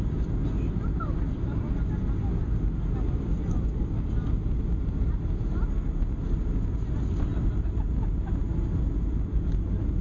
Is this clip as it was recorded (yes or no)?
yes